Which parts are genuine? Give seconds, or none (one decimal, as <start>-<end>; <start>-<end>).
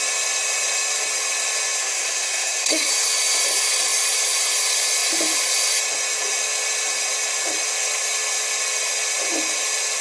0.0-1.8; 2.9-10.0